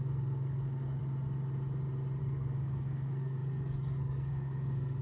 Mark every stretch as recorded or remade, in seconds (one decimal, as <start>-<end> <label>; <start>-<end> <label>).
0.0-1.0 remade; 1.0-2.2 recorded; 2.2-5.0 remade